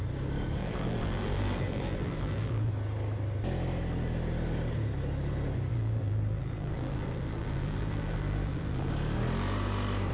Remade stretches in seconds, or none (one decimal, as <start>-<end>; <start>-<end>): 0.6-2.7; 5.7-8.9